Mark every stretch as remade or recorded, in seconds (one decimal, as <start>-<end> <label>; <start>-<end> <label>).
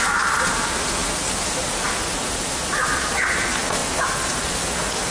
0.0-5.1 recorded